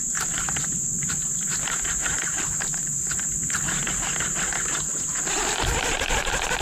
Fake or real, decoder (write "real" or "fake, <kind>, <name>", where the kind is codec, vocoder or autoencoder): real